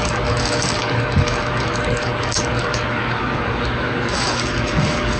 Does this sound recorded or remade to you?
remade